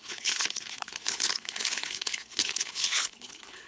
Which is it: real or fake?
fake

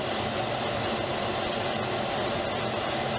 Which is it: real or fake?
real